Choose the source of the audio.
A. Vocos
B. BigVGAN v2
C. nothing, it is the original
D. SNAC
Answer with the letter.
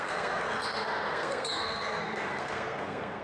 D